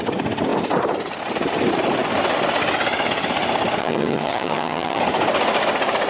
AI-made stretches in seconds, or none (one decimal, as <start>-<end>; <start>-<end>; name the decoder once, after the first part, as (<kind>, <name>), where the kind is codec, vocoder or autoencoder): 3.8-5.0 (vocoder, HiFi-GAN)